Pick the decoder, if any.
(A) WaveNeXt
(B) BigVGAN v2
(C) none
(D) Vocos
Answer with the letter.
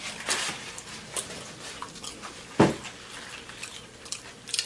C